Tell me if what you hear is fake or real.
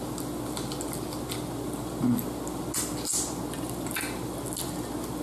real